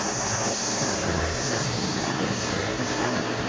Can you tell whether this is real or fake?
fake